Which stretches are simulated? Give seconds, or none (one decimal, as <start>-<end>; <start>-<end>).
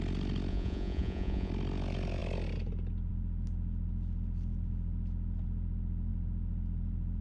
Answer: 0.5-1.5